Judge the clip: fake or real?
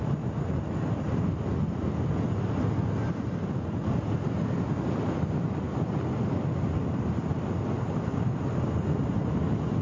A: real